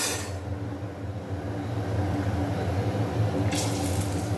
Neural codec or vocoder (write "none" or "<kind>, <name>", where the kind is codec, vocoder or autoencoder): none